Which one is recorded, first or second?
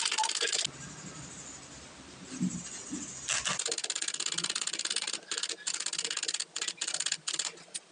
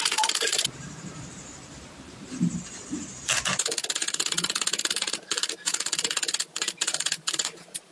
first